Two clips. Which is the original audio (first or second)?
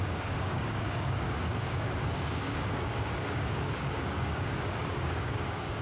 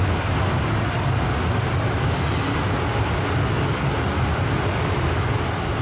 second